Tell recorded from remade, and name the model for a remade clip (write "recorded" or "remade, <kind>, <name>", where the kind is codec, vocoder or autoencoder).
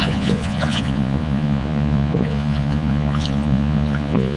remade, vocoder, Vocos